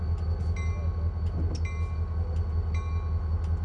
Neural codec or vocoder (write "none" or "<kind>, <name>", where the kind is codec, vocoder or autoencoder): none